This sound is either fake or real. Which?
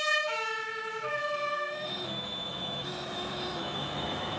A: fake